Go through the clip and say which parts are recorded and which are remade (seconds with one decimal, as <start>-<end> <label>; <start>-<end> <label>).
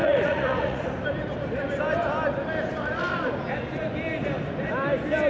0.0-0.9 remade; 0.9-5.3 recorded